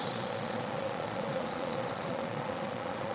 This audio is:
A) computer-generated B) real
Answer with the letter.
A